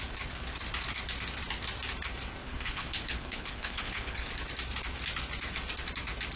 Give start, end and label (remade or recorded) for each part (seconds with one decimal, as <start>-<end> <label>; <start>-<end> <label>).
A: 0.0-2.4 recorded; 2.4-4.3 remade; 4.3-6.4 recorded